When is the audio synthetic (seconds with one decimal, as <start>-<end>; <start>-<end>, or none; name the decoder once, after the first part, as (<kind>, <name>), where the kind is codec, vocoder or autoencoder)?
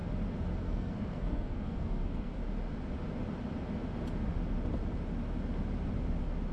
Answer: 0.6-2.4 (codec, SNAC)